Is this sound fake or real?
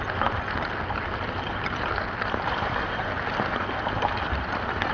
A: real